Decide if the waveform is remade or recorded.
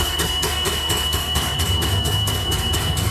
remade